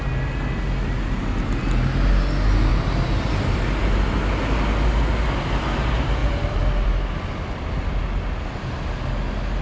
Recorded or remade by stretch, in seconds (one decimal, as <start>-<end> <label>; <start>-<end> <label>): 0.0-2.7 recorded; 2.7-3.8 remade; 3.8-6.2 recorded; 6.2-8.0 remade; 8.0-9.6 recorded